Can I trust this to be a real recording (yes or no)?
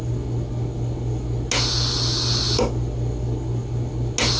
yes